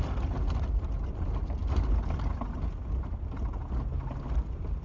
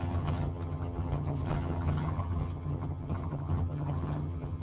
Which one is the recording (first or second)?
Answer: first